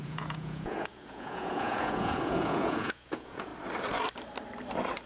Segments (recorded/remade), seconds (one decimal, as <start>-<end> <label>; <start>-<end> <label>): 0.0-3.5 remade; 3.5-5.1 recorded